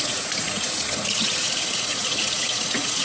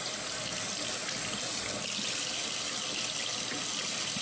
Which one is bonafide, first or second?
second